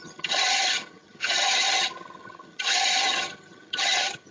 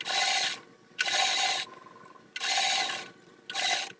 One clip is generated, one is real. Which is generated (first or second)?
first